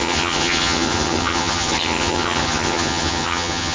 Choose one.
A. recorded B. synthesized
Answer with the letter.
B